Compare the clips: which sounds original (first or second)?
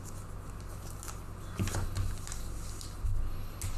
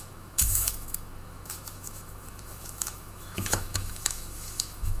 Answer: first